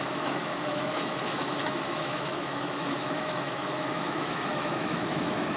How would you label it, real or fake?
fake